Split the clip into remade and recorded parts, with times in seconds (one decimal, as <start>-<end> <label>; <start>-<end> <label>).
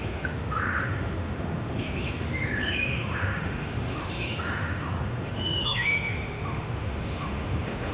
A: 0.0-7.9 remade